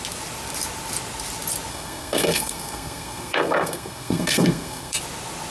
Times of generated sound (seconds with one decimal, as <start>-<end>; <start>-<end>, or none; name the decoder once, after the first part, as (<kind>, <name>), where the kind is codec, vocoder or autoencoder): 1.7-5.0 (codec, SNAC)